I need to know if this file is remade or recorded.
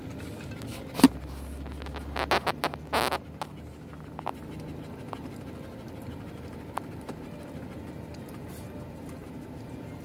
recorded